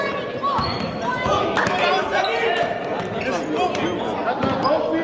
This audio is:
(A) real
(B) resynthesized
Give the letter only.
A